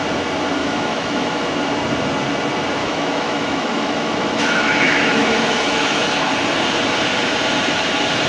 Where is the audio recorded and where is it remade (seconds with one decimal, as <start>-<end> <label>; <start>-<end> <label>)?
0.0-0.6 recorded; 0.6-1.5 remade; 1.5-2.8 recorded; 2.8-6.3 remade; 6.3-8.3 recorded